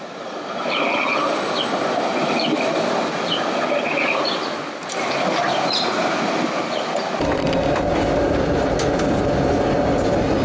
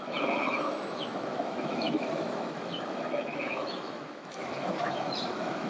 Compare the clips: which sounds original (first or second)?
first